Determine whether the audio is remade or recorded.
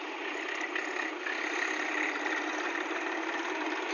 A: recorded